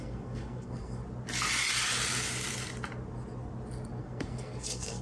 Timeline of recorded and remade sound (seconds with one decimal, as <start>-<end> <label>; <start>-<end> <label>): 0.0-1.0 remade; 1.0-4.0 recorded; 4.0-5.0 remade

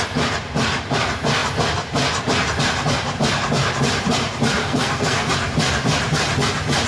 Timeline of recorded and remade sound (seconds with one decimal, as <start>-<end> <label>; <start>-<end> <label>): 0.0-4.6 recorded; 4.6-5.3 remade; 5.3-6.9 recorded

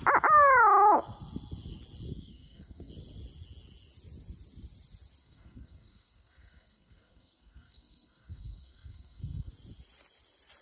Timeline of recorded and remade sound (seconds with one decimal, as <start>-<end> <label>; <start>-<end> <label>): 0.0-2.1 recorded; 2.1-2.9 remade; 2.9-5.2 recorded; 5.2-9.5 remade; 9.5-10.6 recorded

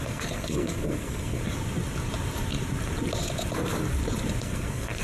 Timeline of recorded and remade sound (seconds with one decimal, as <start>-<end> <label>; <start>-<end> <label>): 0.0-1.4 remade; 1.4-4.4 recorded; 4.4-5.0 remade

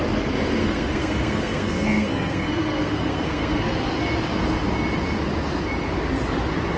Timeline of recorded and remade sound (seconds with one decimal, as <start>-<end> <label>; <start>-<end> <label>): 0.0-0.6 recorded; 0.6-3.7 remade; 3.7-6.8 recorded

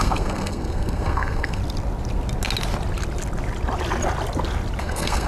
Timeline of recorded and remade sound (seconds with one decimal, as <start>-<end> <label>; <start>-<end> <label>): 0.0-1.6 remade; 1.6-4.8 recorded; 4.8-5.3 remade